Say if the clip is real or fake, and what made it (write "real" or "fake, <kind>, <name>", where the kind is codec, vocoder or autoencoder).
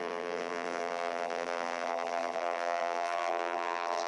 fake, vocoder, BigVGAN v2